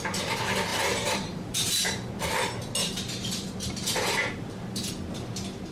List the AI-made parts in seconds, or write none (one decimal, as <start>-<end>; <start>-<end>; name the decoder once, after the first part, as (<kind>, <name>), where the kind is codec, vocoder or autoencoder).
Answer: 0.7-2.1 (vocoder, BigVGAN v2); 2.8-4.9